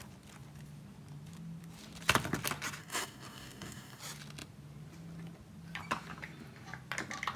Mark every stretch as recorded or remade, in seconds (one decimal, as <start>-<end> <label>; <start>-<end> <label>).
0.0-2.8 recorded; 2.8-4.0 remade; 4.0-7.4 recorded